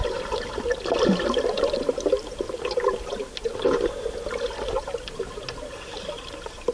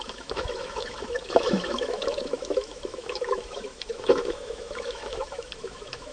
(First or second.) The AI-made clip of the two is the second